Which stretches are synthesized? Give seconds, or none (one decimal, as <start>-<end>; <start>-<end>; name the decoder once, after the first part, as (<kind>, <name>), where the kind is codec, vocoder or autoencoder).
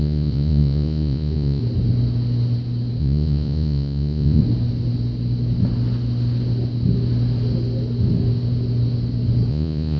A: 0.0-1.6 (vocoder, Vocos); 3.0-4.4; 9.5-10.0